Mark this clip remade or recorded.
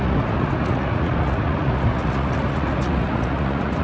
remade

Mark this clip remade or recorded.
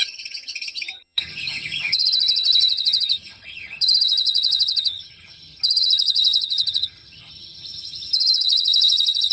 remade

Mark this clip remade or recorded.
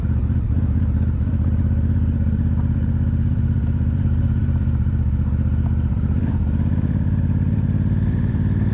remade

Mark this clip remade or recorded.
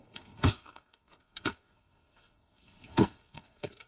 remade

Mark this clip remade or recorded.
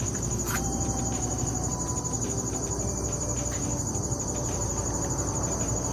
remade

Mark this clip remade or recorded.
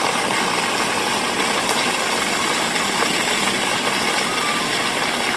recorded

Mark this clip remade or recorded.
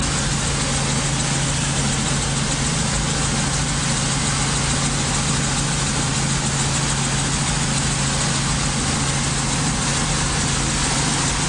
recorded